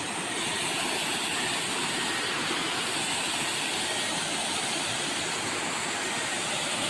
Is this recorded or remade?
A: recorded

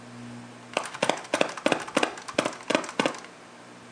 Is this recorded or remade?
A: recorded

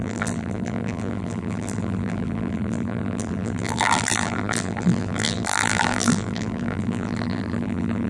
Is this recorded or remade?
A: remade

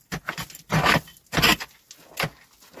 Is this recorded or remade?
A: recorded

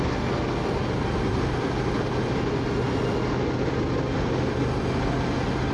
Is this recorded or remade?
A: recorded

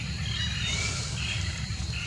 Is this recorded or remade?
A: remade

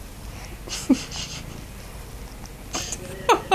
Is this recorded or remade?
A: recorded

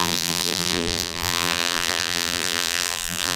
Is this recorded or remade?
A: remade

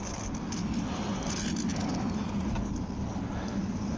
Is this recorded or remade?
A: recorded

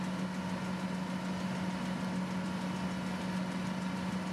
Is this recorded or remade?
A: recorded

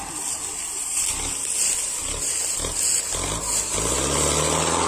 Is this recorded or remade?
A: recorded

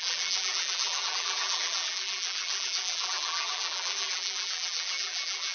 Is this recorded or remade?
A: remade